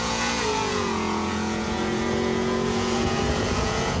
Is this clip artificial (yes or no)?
yes